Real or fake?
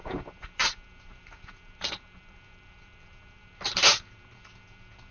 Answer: fake